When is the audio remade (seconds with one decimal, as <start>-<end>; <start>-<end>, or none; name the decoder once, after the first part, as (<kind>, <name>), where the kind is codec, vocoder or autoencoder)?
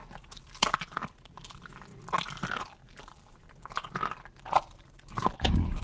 none